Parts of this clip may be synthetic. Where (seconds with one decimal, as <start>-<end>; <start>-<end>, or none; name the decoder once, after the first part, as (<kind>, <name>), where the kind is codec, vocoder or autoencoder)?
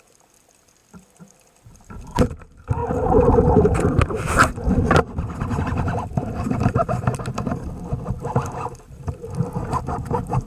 0.0-2.8 (vocoder, BigVGAN v2); 5.6-6.8; 8.2-10.5